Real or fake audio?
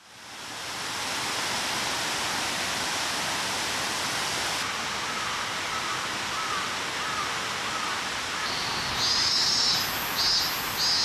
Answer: real